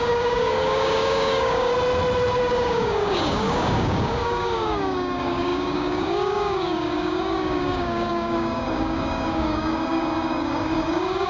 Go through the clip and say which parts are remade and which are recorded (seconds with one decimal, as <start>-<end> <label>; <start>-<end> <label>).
0.0-1.7 remade; 1.7-2.4 recorded; 2.4-11.3 remade